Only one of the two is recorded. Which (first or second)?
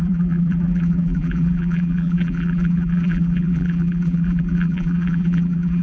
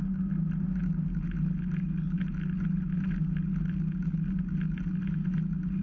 second